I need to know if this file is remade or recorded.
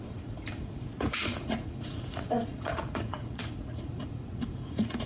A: remade